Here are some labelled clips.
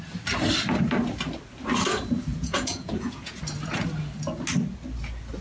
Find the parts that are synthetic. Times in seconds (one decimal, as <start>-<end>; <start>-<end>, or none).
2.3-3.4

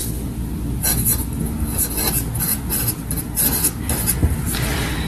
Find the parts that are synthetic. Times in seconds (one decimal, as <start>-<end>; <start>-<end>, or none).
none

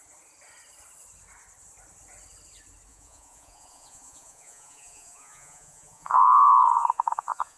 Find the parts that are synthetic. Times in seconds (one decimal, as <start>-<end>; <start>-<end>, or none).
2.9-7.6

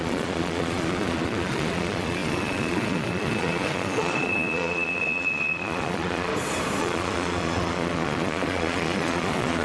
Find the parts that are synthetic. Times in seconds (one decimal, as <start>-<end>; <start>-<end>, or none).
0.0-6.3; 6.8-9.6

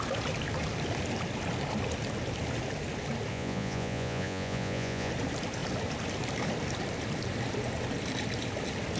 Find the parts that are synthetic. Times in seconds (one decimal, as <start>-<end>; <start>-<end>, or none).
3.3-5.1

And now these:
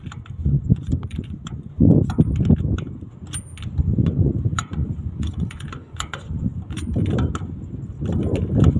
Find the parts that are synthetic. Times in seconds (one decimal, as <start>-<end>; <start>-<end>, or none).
0.4-1.9; 3.9-6.9